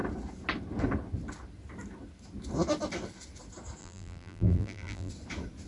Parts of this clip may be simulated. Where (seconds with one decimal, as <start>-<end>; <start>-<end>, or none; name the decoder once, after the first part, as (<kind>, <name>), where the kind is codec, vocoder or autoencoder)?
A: 3.8-5.1 (vocoder, BigVGAN v2)